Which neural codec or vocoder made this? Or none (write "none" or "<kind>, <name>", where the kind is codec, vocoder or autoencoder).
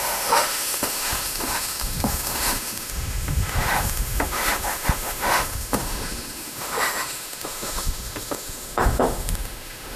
autoencoder, DAC-VAE